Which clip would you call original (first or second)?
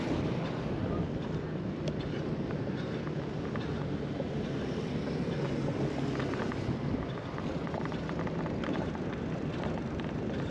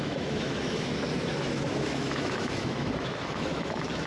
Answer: first